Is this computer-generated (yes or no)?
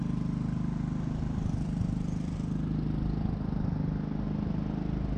no